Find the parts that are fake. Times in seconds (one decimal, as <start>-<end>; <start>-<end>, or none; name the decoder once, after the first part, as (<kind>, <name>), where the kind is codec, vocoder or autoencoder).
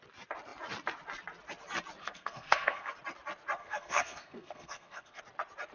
2.0-2.9 (codec, SNAC); 3.6-5.2